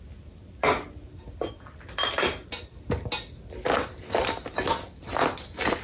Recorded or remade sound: recorded